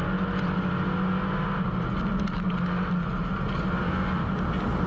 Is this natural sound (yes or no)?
yes